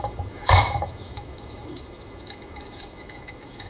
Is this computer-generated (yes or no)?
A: yes